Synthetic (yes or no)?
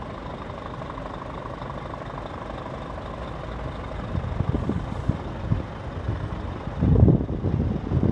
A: no